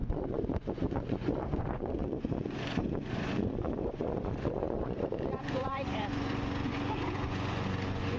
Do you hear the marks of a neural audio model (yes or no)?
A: yes